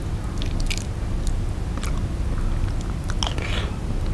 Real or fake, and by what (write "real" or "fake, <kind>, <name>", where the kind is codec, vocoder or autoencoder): real